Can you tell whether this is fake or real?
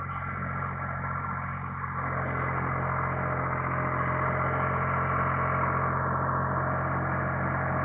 real